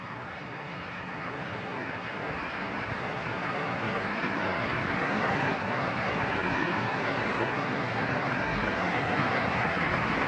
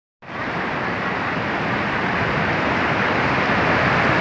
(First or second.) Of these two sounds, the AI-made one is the first